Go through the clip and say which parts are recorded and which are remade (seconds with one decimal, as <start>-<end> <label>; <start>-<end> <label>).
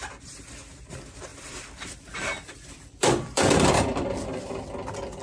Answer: 0.0-1.3 recorded; 1.3-4.4 remade; 4.4-5.2 recorded